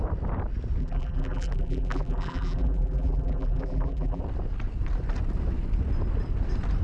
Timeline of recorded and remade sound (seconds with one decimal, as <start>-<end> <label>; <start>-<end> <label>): 0.0-0.8 recorded; 0.8-4.2 remade; 4.2-6.8 recorded